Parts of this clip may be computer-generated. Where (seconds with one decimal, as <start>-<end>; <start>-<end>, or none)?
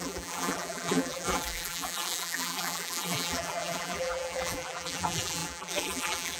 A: 0.0-6.4